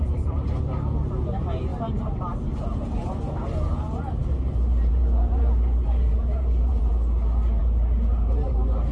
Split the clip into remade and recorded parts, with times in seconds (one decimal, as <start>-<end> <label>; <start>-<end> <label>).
0.0-1.7 recorded; 1.7-3.2 remade; 3.2-4.2 recorded; 4.2-6.9 remade; 6.9-7.6 recorded; 7.6-8.5 remade; 8.5-8.9 recorded